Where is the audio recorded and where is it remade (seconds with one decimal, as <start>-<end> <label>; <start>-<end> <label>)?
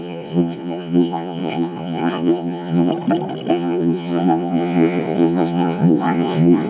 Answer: 0.0-2.9 remade; 2.9-3.5 recorded; 3.5-6.7 remade